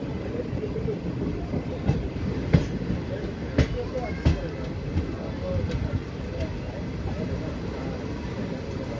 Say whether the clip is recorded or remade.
recorded